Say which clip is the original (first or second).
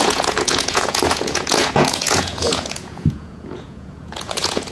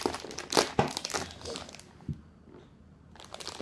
second